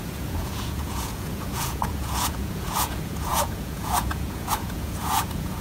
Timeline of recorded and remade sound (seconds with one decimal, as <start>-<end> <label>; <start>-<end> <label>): 0.0-5.6 remade

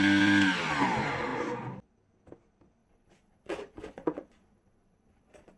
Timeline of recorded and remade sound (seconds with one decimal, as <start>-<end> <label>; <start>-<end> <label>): 0.0-2.8 recorded; 2.8-5.6 remade

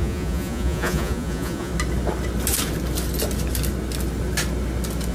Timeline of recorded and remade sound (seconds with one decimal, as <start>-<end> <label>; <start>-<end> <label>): 0.0-1.7 remade; 1.7-5.1 recorded